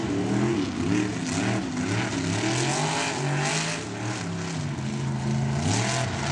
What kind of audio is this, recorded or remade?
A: recorded